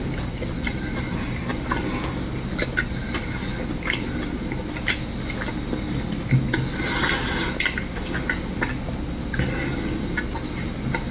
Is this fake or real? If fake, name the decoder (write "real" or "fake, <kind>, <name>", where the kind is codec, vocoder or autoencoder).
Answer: real